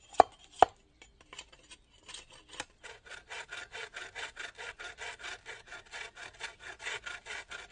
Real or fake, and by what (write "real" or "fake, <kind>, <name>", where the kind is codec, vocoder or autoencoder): real